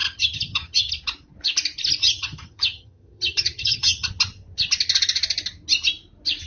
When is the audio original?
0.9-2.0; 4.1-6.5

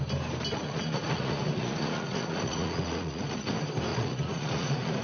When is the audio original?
0.0-0.5; 3.5-3.9

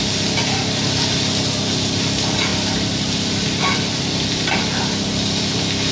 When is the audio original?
0.0-5.9

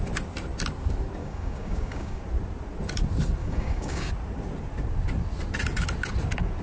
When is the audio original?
0.0-1.2; 2.2-3.4; 4.1-6.6

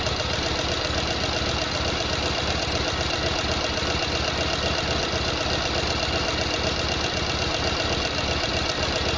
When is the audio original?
0.0-9.2